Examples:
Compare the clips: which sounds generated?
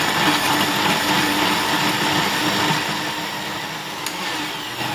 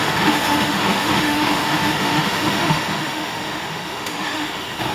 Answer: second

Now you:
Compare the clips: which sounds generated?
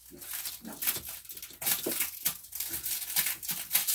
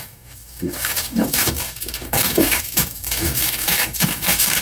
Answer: second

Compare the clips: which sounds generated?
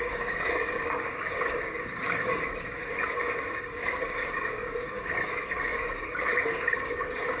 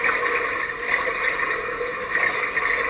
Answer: first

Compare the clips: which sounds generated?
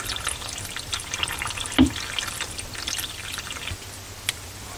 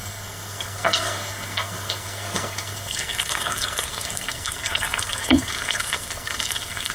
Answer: second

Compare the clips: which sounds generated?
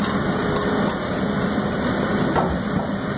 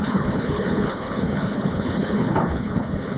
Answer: second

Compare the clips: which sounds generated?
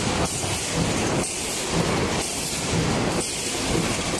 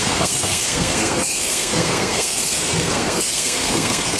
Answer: second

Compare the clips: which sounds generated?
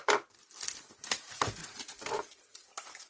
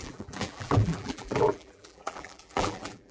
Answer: second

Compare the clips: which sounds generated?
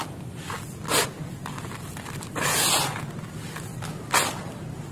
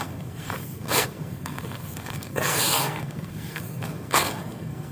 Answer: second